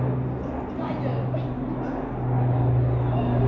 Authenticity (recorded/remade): recorded